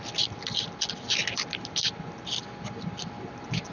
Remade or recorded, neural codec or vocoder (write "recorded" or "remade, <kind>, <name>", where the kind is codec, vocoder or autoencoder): recorded